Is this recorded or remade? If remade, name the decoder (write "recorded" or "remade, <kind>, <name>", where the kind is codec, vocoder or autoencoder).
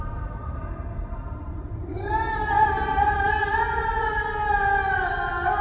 remade, vocoder, BigVGAN v2